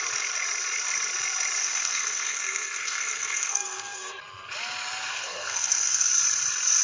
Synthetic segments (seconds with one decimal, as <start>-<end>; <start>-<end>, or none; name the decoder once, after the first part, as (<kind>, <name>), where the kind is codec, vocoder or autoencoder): 1.6-4.2 (codec, SNAC); 5.1-6.1